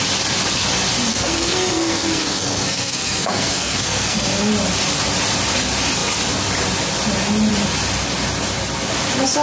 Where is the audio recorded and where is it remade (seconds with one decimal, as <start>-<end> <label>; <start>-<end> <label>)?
0.0-1.1 recorded; 1.1-4.5 remade; 4.5-9.4 recorded